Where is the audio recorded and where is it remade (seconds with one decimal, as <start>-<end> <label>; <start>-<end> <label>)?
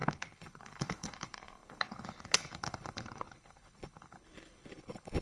0.0-5.2 remade